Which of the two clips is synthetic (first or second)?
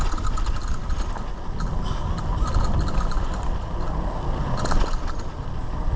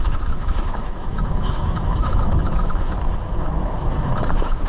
second